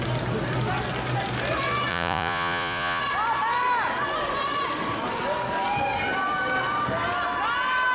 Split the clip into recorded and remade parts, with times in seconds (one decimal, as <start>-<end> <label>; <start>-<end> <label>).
0.0-1.9 recorded; 1.9-3.0 remade; 3.0-7.9 recorded